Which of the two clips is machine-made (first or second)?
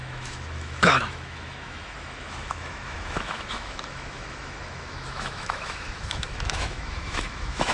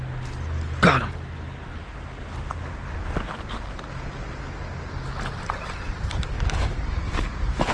first